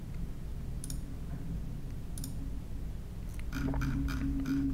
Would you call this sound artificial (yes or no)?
no